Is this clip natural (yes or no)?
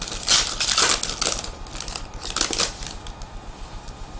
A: yes